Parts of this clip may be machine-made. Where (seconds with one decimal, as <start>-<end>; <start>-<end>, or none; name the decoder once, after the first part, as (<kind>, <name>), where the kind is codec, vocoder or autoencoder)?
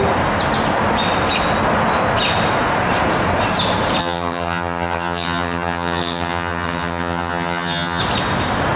4.0-8.0 (vocoder, HiFi-GAN)